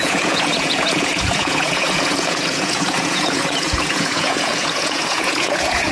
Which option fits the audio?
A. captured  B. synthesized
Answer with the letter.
B